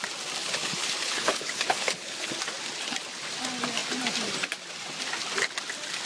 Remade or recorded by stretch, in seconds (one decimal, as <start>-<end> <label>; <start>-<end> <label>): 0.0-0.4 recorded; 0.4-2.3 remade; 2.3-6.1 recorded